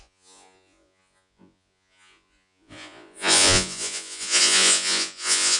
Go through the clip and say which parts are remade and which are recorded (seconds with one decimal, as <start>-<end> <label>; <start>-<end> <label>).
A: 0.0-5.6 remade